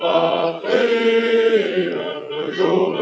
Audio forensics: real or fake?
fake